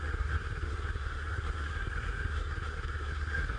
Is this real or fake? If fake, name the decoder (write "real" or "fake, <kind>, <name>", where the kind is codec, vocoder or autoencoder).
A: fake, codec, SNAC